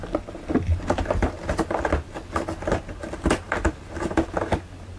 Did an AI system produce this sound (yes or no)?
no